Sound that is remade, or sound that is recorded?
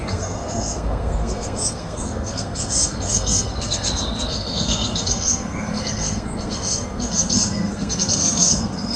remade